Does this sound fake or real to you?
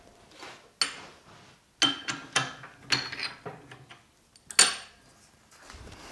real